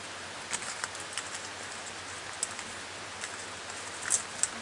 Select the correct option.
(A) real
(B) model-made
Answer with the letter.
A